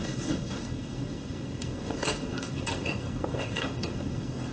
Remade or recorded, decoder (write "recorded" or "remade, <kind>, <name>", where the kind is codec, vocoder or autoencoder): remade, codec, SNAC